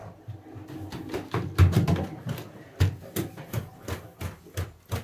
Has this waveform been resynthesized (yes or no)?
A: no